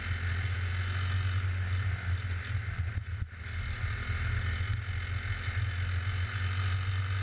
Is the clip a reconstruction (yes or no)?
no